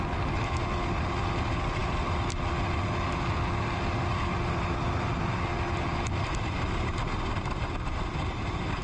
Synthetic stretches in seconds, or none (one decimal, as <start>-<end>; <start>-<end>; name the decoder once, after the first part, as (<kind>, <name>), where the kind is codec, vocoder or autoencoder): none